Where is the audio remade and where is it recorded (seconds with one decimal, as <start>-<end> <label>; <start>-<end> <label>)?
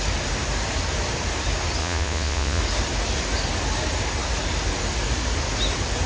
0.0-1.8 recorded; 1.8-2.6 remade; 2.6-6.1 recorded